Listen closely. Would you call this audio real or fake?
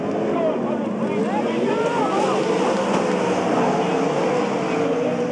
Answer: real